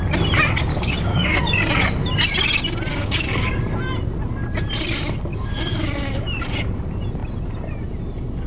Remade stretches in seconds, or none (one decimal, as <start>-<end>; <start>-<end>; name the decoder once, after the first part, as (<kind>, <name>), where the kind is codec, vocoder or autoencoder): 0.7-1.4 (codec, DAC); 2.9-3.6; 5.3-5.9